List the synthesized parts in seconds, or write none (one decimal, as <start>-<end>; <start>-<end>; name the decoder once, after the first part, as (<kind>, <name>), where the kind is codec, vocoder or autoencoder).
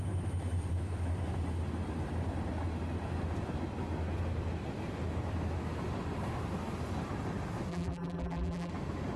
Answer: 7.7-8.7 (vocoder, BigVGAN v2)